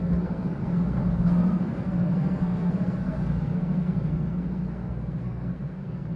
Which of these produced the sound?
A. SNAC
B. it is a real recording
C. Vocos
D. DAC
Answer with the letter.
A